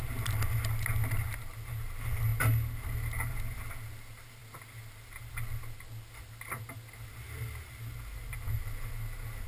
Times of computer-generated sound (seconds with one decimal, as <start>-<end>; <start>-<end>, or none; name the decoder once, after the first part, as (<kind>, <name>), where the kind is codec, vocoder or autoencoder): none

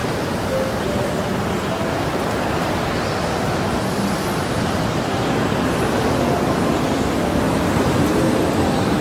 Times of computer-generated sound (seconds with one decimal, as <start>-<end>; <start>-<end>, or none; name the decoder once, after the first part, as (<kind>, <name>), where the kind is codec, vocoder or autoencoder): 0.0-1.4 (vocoder, BigVGAN v2)

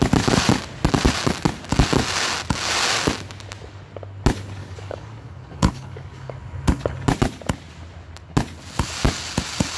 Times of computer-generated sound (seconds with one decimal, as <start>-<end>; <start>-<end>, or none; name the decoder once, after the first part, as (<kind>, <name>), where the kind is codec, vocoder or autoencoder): 4.6-6.3 (codec, DAC)